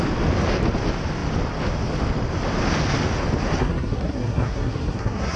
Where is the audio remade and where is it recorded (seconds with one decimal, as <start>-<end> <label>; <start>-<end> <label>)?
0.0-3.6 recorded; 3.6-5.4 remade